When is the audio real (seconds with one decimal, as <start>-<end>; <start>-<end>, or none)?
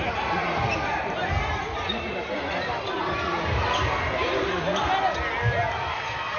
0.0-0.7; 1.2-6.4